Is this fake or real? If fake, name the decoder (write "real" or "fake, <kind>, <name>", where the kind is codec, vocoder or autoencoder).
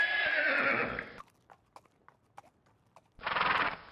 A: real